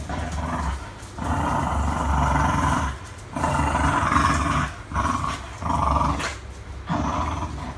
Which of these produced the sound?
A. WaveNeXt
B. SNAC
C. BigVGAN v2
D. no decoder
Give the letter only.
D